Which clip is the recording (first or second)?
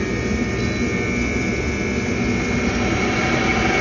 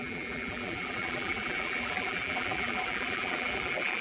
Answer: first